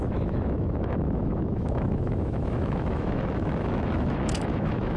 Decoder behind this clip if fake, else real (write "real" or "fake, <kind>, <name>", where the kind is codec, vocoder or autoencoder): fake, autoencoder, DAC-VAE